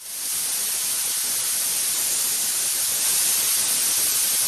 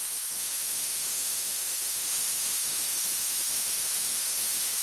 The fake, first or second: second